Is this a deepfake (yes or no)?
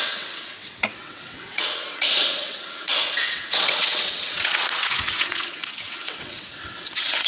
yes